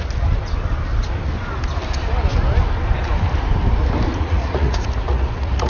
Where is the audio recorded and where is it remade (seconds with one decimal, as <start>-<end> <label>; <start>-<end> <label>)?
0.0-4.1 recorded; 4.1-5.7 remade